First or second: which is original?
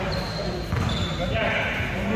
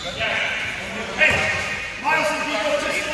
first